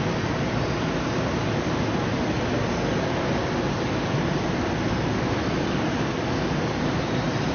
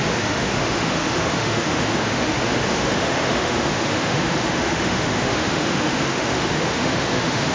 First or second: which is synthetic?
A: second